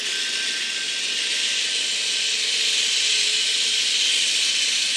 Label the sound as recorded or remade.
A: recorded